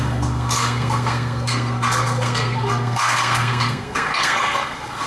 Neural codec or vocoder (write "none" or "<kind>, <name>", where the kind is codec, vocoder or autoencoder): codec, SNAC